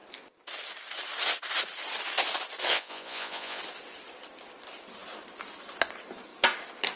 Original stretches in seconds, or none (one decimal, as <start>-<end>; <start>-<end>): 0.0-2.7; 3.6-7.0